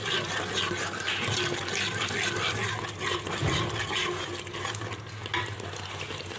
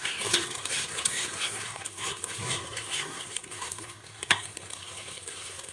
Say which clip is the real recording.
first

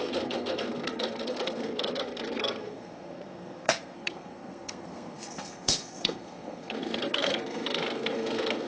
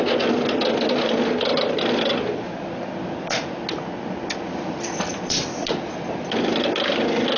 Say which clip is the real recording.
second